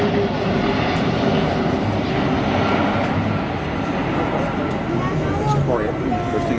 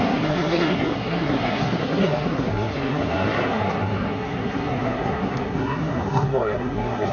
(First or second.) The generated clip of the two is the second